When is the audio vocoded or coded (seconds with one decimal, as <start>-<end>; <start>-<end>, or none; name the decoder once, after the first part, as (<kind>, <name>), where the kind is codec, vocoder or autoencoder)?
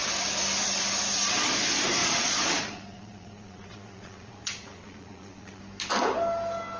2.0-5.6 (vocoder, Vocos)